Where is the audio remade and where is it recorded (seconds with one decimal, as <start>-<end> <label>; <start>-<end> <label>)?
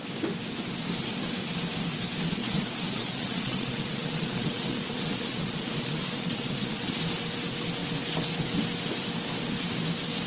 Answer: 0.0-2.4 recorded; 2.4-7.0 remade; 7.0-10.3 recorded